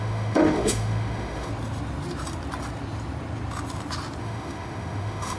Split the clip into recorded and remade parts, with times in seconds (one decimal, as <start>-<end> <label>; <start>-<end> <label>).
0.0-1.5 remade; 1.5-4.2 recorded; 4.2-5.4 remade